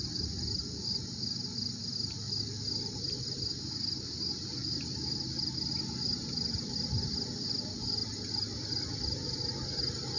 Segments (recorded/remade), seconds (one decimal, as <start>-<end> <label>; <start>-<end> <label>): 0.0-10.2 recorded